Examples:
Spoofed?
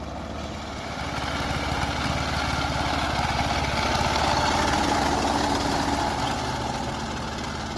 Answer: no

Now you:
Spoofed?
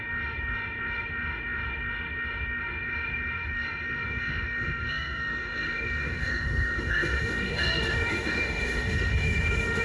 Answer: yes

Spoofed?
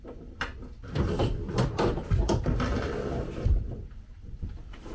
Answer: yes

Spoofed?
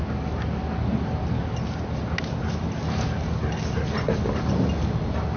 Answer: no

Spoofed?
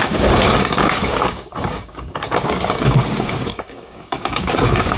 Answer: yes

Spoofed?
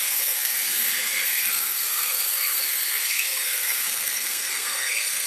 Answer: yes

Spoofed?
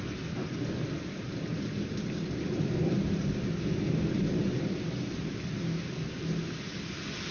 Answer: no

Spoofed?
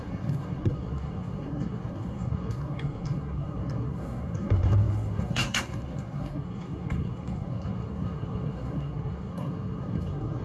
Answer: yes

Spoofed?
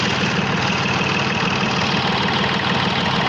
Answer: no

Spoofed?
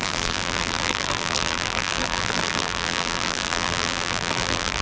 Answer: yes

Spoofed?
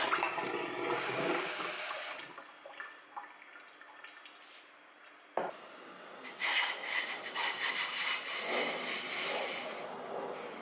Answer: no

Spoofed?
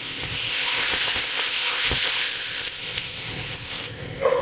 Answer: yes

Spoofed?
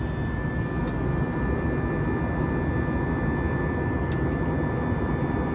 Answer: no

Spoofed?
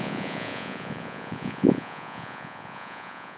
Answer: yes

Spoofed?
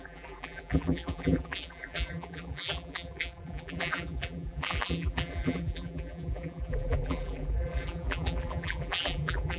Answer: yes